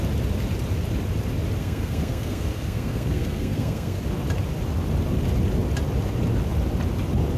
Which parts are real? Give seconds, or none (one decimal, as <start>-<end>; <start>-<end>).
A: 0.0-1.6; 4.0-7.4